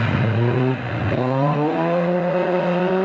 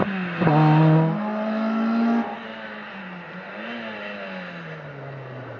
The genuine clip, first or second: second